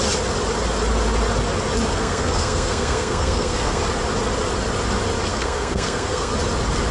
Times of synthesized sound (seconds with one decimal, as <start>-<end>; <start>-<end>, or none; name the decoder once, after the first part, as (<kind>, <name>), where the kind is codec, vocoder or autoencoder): 1.9-3.8 (codec, SNAC); 5.3-6.3